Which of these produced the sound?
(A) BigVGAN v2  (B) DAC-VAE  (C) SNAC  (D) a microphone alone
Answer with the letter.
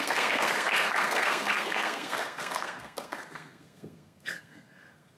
C